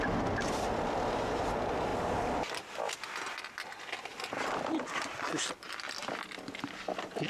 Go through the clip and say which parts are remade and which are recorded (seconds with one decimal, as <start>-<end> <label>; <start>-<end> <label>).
0.0-1.9 recorded; 1.9-2.9 remade; 2.9-4.1 recorded; 4.1-5.3 remade; 5.3-6.0 recorded; 6.0-7.3 remade